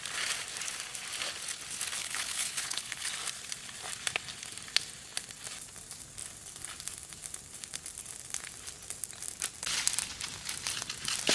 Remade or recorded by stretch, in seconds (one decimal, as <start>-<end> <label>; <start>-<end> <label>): 0.0-2.0 recorded; 2.0-3.1 remade; 3.1-11.3 recorded